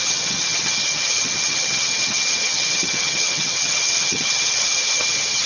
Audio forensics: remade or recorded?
remade